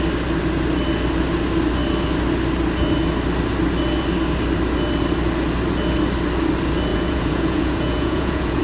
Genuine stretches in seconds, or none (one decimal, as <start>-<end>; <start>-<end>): 0.0-6.9